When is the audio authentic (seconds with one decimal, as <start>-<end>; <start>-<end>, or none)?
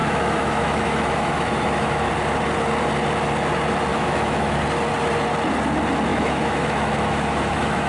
2.1-3.9; 4.6-6.1